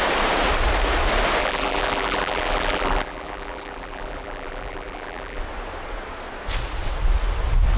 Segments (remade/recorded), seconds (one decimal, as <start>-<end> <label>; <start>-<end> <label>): 0.0-1.4 recorded; 1.4-5.4 remade; 5.4-7.8 recorded